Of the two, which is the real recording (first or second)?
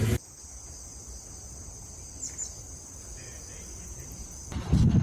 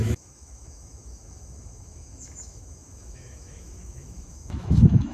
first